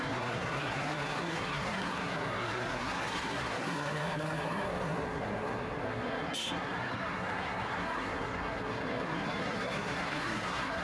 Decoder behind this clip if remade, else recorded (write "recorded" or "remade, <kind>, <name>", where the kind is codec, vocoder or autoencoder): remade, codec, SNAC